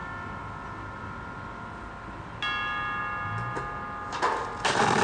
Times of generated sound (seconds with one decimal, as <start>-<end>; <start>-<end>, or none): none